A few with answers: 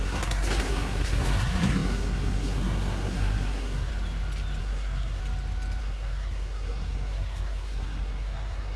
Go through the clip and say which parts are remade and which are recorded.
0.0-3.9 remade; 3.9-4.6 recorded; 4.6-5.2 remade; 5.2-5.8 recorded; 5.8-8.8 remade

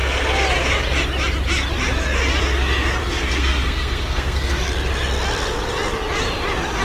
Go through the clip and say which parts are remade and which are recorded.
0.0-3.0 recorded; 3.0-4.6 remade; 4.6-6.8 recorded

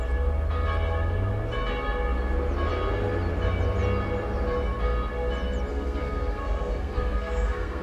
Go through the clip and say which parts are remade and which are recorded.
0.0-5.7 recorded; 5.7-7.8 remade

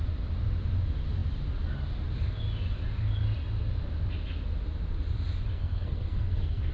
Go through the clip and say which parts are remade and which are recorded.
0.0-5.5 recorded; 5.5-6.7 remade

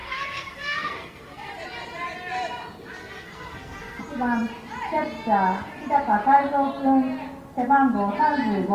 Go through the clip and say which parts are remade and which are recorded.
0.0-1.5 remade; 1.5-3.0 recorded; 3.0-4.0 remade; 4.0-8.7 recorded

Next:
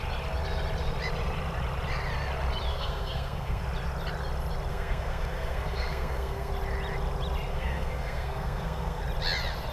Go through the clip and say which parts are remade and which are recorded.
0.0-2.7 recorded; 2.7-3.6 remade; 3.6-4.7 recorded; 4.7-6.5 remade; 6.5-7.5 recorded; 7.5-9.0 remade; 9.0-9.7 recorded